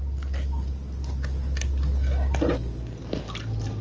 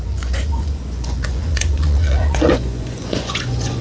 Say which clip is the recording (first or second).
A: first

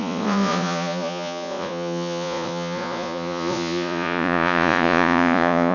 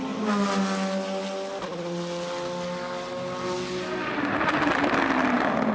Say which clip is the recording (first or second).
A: second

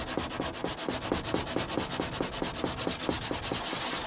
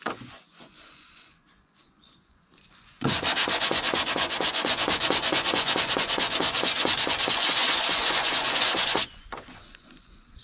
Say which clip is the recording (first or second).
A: first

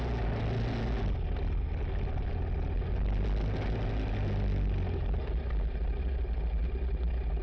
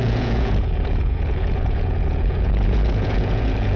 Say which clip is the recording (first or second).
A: first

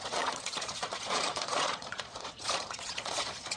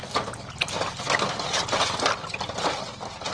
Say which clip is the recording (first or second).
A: second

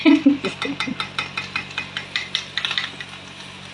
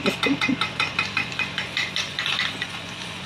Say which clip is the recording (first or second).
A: first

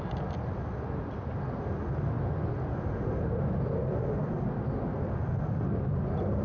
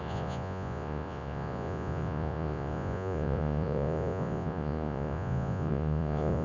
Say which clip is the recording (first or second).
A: first